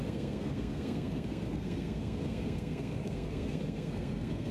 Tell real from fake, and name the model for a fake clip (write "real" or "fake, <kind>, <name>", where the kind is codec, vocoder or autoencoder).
fake, codec, SNAC